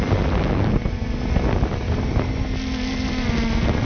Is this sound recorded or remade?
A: recorded